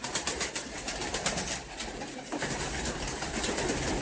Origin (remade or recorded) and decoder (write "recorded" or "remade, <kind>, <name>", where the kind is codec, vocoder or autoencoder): remade, vocoder, BigVGAN v2